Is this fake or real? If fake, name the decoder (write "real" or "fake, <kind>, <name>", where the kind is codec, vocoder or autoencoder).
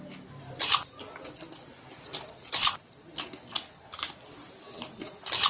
real